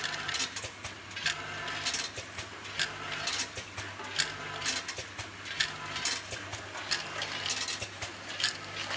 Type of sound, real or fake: real